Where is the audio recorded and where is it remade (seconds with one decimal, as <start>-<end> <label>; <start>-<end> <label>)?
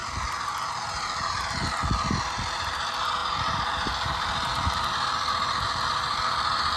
0.0-6.8 recorded